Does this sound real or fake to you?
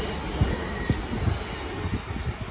real